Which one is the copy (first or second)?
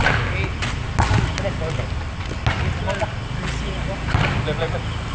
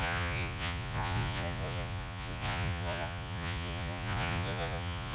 second